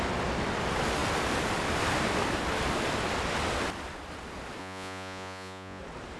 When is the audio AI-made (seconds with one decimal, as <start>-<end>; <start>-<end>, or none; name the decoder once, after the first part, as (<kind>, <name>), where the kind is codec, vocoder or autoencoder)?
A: 4.6-5.8 (vocoder, Vocos)